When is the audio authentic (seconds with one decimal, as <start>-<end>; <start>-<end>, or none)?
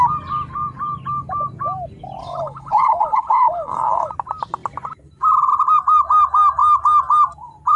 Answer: 0.0-2.2; 4.1-7.8